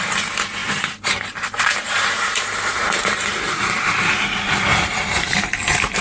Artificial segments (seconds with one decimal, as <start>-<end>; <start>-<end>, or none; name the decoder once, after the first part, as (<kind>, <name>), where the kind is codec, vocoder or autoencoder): 0.6-4.2 (vocoder, BigVGAN v2); 4.7-5.5